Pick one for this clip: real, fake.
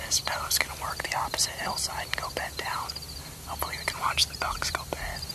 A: real